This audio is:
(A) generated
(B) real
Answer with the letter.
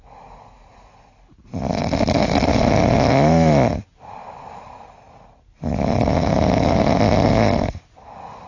B